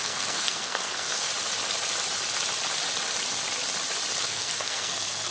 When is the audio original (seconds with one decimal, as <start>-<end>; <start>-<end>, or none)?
1.3-4.2